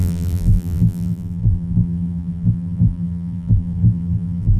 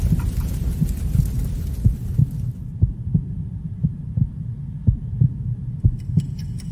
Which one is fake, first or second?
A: first